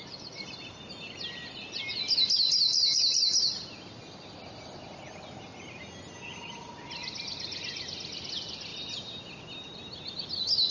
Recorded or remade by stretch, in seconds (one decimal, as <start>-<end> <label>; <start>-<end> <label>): 0.0-2.7 recorded; 2.7-3.2 remade; 3.2-10.7 recorded